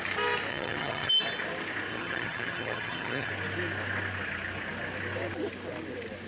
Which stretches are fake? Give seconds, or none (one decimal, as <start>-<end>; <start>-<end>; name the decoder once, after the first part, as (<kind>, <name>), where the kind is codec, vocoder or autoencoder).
0.5-1.1 (vocoder, HiFi-GAN); 1.9-3.3